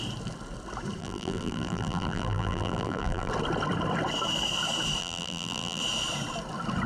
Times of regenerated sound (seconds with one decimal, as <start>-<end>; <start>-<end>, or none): 1.0-3.3; 5.0-5.8